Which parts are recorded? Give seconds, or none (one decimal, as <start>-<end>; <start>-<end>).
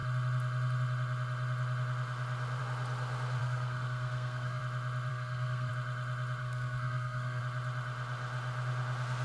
0.0-3.4; 4.6-5.1; 5.7-6.4; 7.4-9.2